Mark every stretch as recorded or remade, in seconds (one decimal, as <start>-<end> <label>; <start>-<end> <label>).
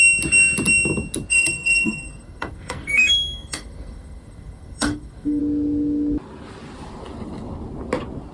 0.0-1.3 recorded; 1.3-5.4 remade; 5.4-8.3 recorded